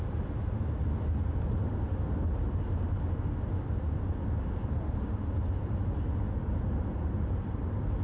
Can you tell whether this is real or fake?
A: real